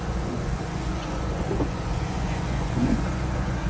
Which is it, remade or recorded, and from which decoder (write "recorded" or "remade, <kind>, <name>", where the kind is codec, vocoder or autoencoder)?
remade, vocoder, Vocos